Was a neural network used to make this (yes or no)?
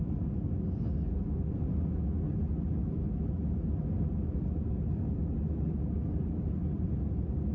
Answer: no